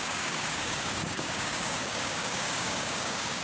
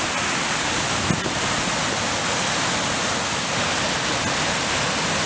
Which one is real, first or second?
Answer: second